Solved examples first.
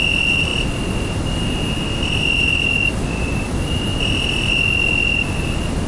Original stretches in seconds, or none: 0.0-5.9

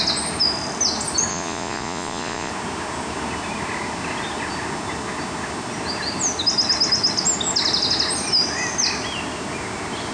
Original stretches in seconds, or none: 0.0-1.3; 2.5-10.1